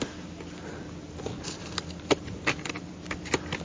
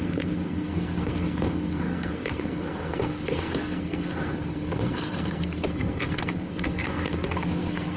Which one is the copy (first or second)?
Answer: second